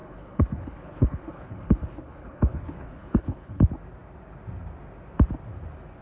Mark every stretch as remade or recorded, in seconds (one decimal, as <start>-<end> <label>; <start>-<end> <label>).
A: 0.0-3.6 remade; 3.6-6.0 recorded